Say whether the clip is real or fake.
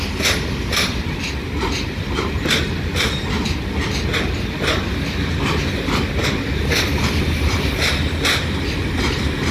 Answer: real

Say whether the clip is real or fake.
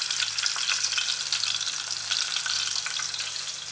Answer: real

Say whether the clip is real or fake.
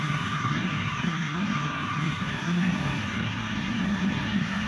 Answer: fake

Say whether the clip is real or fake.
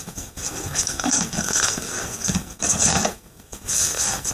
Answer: fake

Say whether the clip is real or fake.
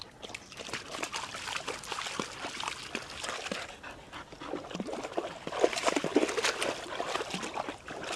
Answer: real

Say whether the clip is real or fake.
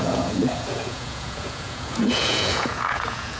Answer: fake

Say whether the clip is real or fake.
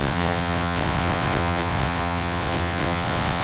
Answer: fake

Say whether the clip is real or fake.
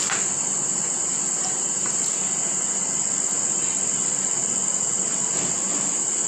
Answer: real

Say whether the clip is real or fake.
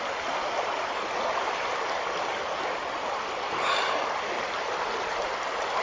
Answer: real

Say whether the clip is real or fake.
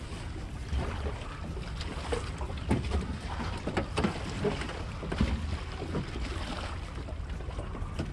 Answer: real